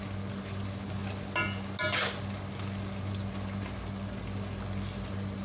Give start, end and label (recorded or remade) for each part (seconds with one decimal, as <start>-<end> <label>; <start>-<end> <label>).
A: 0.0-5.4 recorded